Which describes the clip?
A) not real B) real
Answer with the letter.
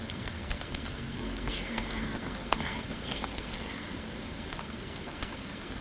A